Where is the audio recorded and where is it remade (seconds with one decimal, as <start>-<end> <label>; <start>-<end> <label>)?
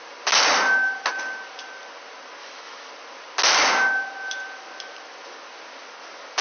0.0-2.4 recorded; 2.4-2.9 remade; 2.9-6.4 recorded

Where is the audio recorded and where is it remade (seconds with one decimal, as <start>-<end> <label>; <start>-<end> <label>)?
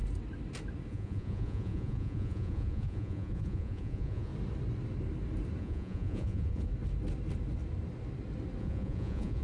0.0-0.9 recorded; 0.9-4.3 remade; 4.3-5.6 recorded; 5.6-6.7 remade; 6.7-8.6 recorded; 8.6-9.4 remade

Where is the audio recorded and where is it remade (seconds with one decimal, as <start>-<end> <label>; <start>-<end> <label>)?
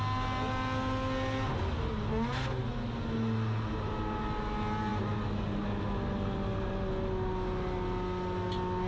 0.0-8.9 recorded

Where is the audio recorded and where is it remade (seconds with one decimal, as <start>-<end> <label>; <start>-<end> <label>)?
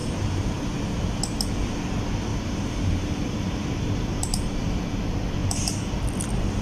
0.0-0.5 remade; 0.5-2.3 recorded; 2.3-4.8 remade; 4.8-5.4 recorded; 5.4-6.0 remade; 6.0-6.6 recorded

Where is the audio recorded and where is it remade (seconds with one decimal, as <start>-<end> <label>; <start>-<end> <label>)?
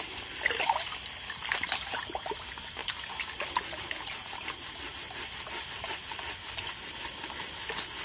0.0-8.0 recorded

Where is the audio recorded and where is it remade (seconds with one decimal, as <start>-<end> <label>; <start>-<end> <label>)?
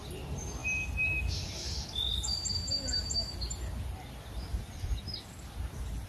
0.0-6.1 recorded